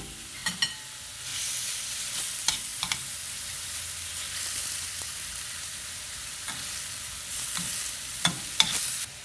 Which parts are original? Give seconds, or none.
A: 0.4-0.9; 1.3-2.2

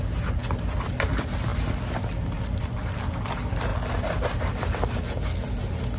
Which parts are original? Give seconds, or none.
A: 0.0-6.0

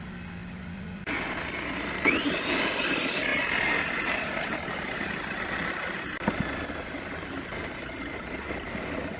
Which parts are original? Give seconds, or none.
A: 0.0-9.2

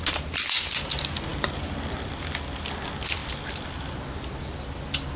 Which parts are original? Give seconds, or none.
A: 0.0-1.3; 2.2-3.2; 4.8-5.2

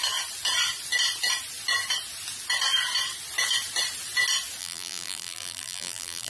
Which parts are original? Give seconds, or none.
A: 0.0-4.6

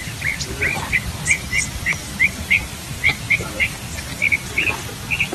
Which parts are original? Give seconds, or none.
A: 1.0-2.0; 3.8-5.3

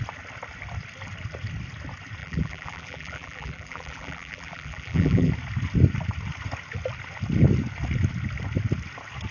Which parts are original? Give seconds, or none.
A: 0.0-2.2; 5.3-9.3